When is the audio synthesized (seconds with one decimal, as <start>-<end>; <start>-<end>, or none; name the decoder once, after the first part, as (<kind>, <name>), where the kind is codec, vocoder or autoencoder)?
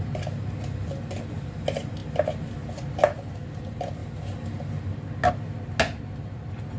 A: none